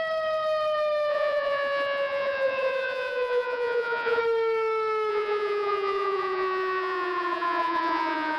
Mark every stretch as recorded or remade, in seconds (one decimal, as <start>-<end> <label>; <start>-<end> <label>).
0.0-1.1 recorded; 1.1-4.2 remade; 4.2-5.1 recorded; 5.1-8.4 remade